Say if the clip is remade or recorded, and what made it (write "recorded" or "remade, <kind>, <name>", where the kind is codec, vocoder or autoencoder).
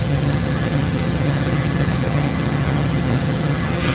remade, vocoder, HiFi-GAN